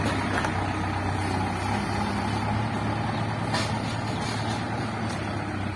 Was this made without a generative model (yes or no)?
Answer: yes